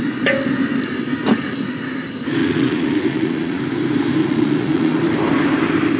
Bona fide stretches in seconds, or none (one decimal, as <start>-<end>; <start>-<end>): 0.0-2.4; 3.6-4.2; 5.0-6.0